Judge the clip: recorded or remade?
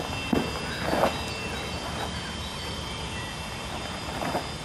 recorded